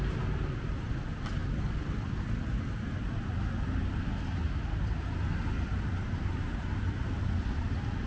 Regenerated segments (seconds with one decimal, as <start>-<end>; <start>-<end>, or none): none